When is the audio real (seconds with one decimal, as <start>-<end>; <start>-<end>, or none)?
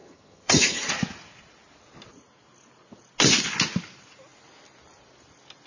0.9-5.7